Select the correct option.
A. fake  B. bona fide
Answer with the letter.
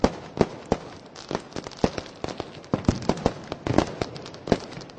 B